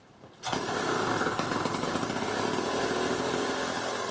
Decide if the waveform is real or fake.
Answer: real